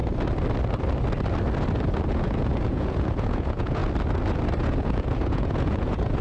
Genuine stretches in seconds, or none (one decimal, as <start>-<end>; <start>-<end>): 0.0-2.1; 3.8-4.6